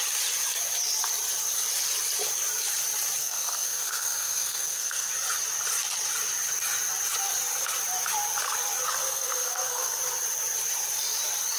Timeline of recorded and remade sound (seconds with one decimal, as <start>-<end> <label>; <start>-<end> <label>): 0.0-3.2 recorded; 3.2-5.1 remade; 5.1-9.0 recorded; 9.0-10.0 remade; 10.0-11.6 recorded